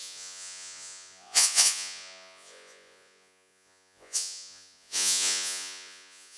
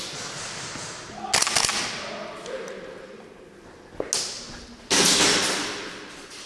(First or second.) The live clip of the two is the second